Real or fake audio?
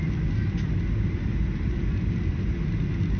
real